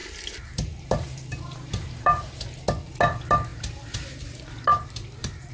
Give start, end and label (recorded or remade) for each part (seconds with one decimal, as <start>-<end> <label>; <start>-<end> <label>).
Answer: 0.0-2.6 remade; 2.6-4.7 recorded; 4.7-5.5 remade